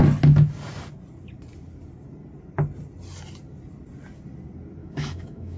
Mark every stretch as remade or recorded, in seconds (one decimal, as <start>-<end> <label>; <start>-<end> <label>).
0.0-4.8 recorded; 4.8-5.6 remade